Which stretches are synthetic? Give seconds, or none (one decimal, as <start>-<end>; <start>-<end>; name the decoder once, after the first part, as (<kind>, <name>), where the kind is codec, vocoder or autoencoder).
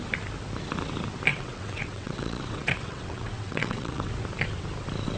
1.3-4.1 (vocoder, WaveNeXt)